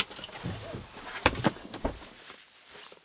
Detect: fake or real real